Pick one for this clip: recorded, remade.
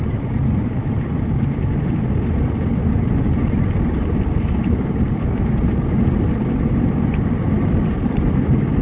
recorded